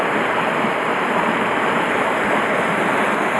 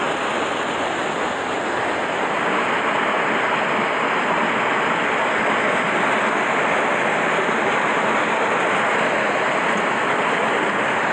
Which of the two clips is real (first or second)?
second